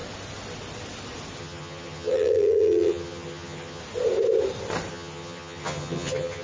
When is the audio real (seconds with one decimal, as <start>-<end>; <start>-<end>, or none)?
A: 0.0-1.4; 3.8-4.9